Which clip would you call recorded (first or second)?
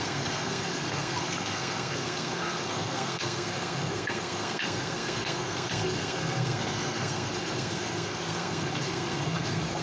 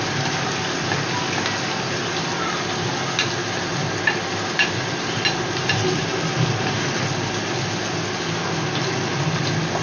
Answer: second